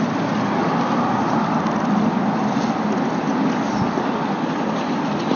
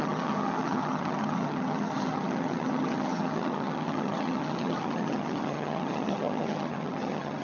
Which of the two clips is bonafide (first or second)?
first